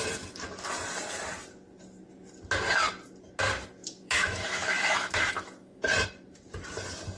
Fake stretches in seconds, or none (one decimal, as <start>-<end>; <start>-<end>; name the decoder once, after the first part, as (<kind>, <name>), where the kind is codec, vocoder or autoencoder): 3.8-5.8 (autoencoder, DAC-VAE)